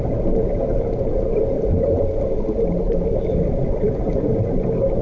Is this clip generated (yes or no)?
yes